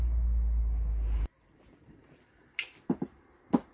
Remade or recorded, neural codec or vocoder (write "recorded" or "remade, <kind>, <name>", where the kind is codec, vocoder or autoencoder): recorded